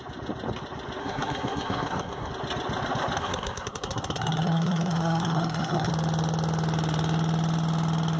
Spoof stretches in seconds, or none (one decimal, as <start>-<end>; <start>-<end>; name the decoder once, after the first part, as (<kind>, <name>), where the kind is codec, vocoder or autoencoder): 1.0-2.3 (codec, SNAC); 3.2-5.9